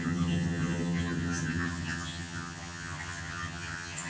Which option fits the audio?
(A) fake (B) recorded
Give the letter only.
A